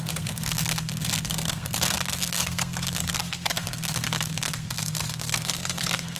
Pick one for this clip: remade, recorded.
remade